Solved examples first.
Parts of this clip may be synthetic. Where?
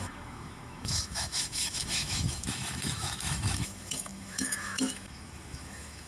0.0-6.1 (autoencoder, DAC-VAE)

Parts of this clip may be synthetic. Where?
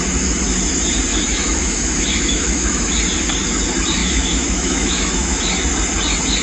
1.1-3.0 (autoencoder, DAC-VAE); 4.0-5.4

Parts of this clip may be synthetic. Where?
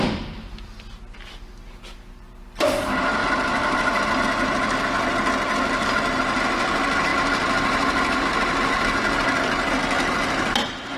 none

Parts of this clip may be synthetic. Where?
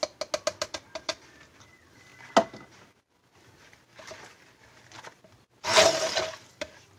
none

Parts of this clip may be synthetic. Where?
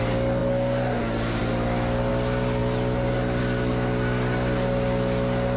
none